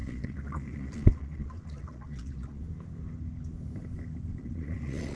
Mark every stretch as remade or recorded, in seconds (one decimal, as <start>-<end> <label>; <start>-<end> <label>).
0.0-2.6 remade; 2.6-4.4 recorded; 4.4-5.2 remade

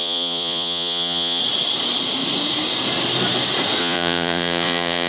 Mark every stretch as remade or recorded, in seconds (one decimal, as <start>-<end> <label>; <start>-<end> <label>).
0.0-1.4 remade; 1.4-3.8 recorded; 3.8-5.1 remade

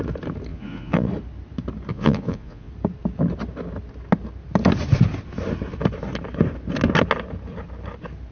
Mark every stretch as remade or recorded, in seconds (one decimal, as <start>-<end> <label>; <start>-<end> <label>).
0.0-0.5 recorded; 0.5-1.1 remade; 1.1-1.9 recorded; 1.9-2.7 remade; 2.7-8.3 recorded

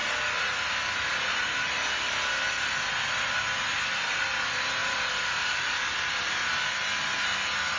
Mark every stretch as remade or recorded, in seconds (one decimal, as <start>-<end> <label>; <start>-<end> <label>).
0.0-7.8 recorded